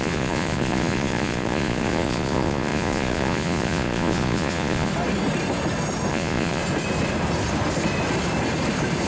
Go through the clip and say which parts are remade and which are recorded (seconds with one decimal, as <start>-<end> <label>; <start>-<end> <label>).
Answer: 0.0-4.9 remade; 4.9-6.1 recorded; 6.1-6.6 remade; 6.6-9.1 recorded

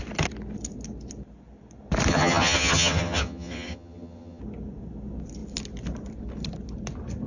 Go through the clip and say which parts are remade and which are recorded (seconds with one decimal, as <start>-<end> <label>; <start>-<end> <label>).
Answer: 0.0-2.1 recorded; 2.1-4.4 remade; 4.4-7.3 recorded

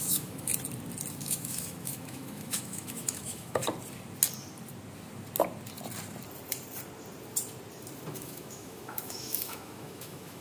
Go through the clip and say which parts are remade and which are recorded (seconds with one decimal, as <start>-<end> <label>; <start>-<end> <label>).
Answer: 0.0-0.5 remade; 0.5-1.1 recorded; 1.1-3.6 remade; 3.6-8.1 recorded; 8.1-10.4 remade

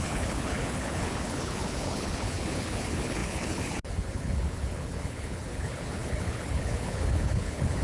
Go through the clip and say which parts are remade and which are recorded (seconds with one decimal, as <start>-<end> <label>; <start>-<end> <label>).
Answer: 0.0-7.8 remade

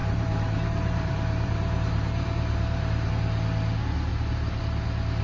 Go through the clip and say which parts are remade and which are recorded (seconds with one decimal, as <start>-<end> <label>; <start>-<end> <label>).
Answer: 0.0-3.1 remade; 3.1-4.1 recorded; 4.1-4.6 remade; 4.6-5.2 recorded

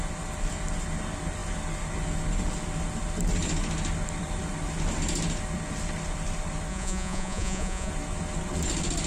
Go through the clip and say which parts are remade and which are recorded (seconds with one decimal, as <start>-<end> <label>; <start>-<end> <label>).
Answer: 0.0-6.7 recorded; 6.7-7.9 remade; 7.9-9.1 recorded

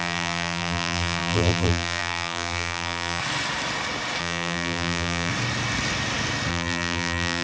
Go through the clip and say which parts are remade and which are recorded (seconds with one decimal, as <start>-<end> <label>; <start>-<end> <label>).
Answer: 0.0-3.2 remade; 3.2-4.2 recorded; 4.2-5.3 remade; 5.3-6.5 recorded; 6.5-7.4 remade

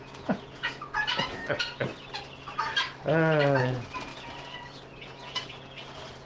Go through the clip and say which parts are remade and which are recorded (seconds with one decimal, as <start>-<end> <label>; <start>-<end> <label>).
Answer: 0.0-1.4 remade; 1.4-3.6 recorded; 3.6-6.3 remade